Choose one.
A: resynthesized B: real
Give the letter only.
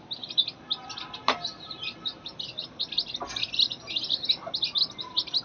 B